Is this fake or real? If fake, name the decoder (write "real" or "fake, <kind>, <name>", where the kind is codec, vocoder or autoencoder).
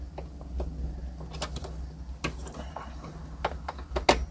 real